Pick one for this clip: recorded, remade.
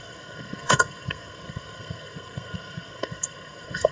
remade